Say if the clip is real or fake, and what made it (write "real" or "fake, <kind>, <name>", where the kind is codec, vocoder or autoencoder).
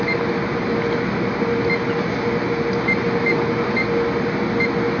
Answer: real